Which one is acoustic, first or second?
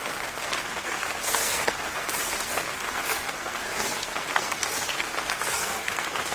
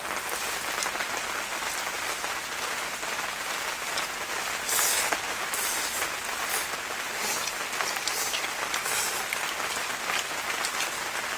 second